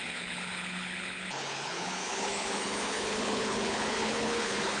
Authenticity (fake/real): fake